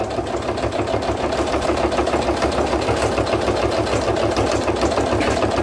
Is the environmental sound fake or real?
real